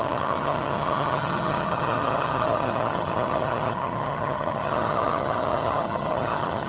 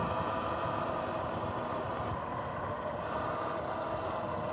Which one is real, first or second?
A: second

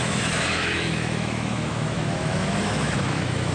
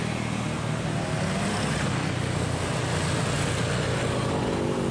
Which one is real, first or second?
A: second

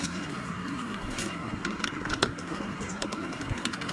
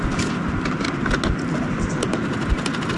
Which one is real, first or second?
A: second